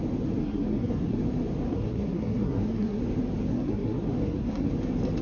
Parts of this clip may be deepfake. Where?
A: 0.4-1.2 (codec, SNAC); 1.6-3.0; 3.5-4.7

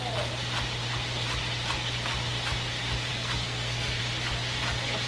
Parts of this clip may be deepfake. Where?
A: 3.1-4.0 (codec, SNAC)

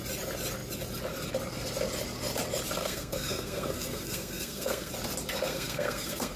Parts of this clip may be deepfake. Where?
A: 2.8-4.9 (codec, SNAC); 5.5-6.4

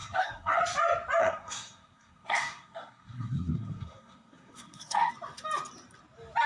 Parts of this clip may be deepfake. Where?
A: 0.0-0.6 (codec, SNAC); 1.2-5.1

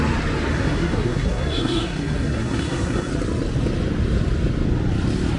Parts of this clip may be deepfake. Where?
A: 0.5-3.1 (codec, SNAC)